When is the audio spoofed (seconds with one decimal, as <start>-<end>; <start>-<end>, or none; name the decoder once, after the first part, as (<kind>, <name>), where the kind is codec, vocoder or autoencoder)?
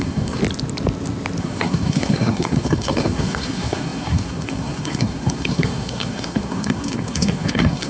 0.0-0.4 (codec, SNAC); 1.4-7.9